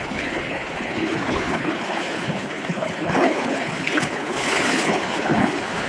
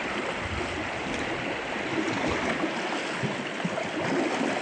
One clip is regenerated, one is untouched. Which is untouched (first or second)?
second